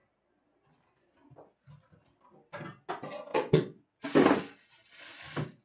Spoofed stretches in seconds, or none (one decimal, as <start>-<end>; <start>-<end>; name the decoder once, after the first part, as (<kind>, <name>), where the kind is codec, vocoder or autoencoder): 3.3-4.0 (vocoder, WaveNeXt)